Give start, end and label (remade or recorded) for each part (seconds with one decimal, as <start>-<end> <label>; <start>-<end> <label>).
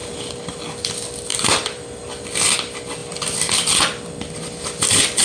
0.0-1.3 recorded; 1.3-2.0 remade; 2.0-3.0 recorded; 3.0-3.8 remade; 3.8-5.2 recorded